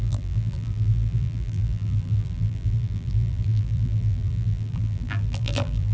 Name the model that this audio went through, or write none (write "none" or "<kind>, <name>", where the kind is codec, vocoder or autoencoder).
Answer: vocoder, BigVGAN v2